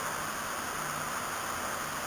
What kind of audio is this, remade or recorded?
recorded